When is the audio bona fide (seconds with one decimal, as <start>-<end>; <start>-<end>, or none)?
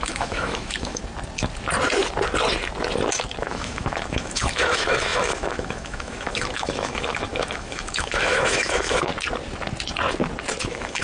1.0-3.4; 9.1-10.6